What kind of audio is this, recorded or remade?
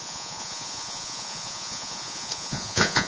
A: remade